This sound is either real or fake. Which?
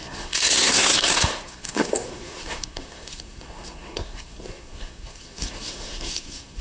fake